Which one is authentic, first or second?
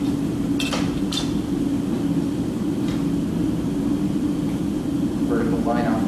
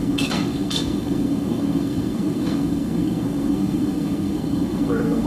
first